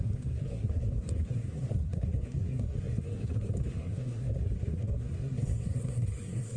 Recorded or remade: remade